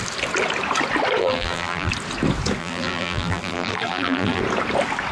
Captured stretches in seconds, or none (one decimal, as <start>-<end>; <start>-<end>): 0.0-1.2; 1.9-2.6; 4.4-5.1